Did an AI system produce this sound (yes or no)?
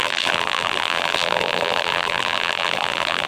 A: yes